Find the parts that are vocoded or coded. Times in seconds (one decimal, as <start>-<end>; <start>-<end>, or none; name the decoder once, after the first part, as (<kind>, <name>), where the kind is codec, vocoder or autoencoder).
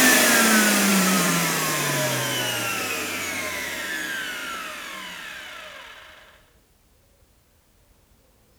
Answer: 0.9-2.2 (vocoder, BigVGAN v2); 2.7-3.8